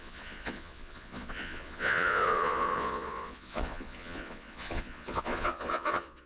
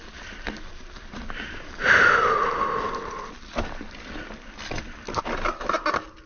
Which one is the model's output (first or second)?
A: first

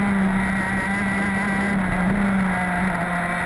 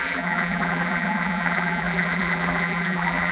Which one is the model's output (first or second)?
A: second